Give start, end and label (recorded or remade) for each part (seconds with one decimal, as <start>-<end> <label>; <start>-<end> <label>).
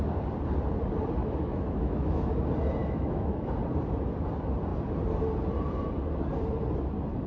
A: 0.0-1.2 recorded; 1.2-2.4 remade; 2.4-2.8 recorded; 2.8-3.6 remade; 3.6-7.3 recorded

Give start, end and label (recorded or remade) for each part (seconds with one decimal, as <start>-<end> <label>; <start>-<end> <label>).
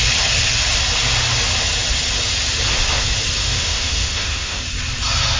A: 0.0-3.4 recorded; 3.4-4.6 remade; 4.6-5.4 recorded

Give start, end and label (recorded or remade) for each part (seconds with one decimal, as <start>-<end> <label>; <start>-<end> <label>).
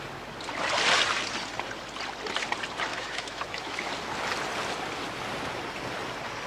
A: 0.0-2.9 recorded; 2.9-3.9 remade; 3.9-6.5 recorded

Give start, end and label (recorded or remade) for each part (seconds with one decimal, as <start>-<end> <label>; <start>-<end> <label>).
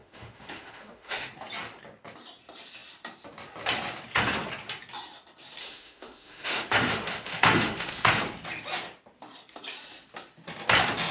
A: 0.0-1.3 remade; 1.3-5.6 recorded; 5.6-8.2 remade; 8.2-11.1 recorded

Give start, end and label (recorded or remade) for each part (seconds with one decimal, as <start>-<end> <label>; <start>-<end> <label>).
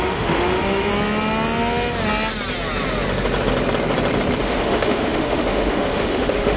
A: 0.0-0.9 remade; 0.9-4.4 recorded; 4.4-6.6 remade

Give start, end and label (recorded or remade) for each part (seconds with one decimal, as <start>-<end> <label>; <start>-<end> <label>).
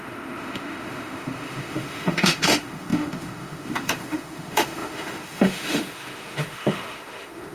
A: 0.0-7.5 remade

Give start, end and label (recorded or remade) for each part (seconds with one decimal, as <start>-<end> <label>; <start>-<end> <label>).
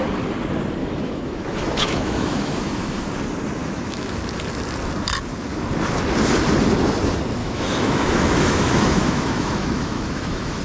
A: 0.0-0.8 recorded; 0.8-3.1 remade; 3.1-3.6 recorded; 3.6-4.2 remade; 4.2-7.4 recorded; 7.4-10.6 remade